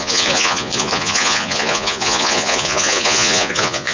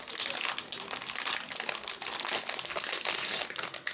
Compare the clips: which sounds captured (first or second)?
second